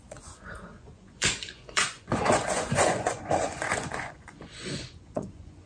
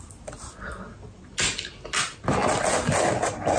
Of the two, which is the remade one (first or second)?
first